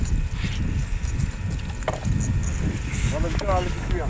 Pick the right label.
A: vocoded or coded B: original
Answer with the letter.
B